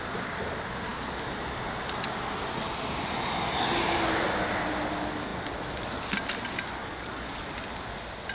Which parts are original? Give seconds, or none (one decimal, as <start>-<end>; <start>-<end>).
0.0-6.8; 7.4-8.3